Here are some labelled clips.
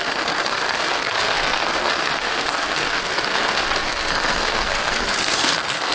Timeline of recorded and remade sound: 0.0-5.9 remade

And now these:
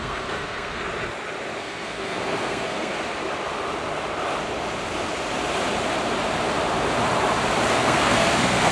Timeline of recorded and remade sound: 0.0-0.9 remade; 0.9-1.6 recorded; 1.6-2.9 remade; 2.9-7.7 recorded; 7.7-8.7 remade

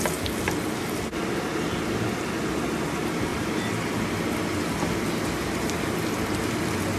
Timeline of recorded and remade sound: 0.0-7.0 recorded

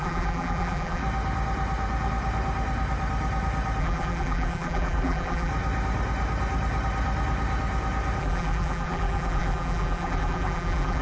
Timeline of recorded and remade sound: 0.0-1.0 remade; 1.0-3.8 recorded; 3.8-5.5 remade; 5.5-8.2 recorded; 8.2-11.0 remade

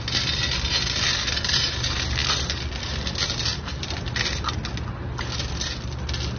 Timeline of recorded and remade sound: 0.0-6.4 recorded

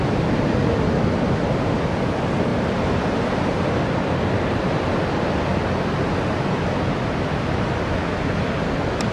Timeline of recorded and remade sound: 0.0-9.1 recorded

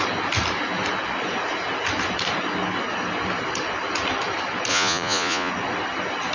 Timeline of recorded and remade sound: 0.0-4.7 recorded; 4.7-5.5 remade; 5.5-6.3 recorded